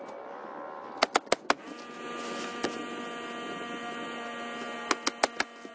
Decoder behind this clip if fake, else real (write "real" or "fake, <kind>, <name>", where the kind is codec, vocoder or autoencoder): real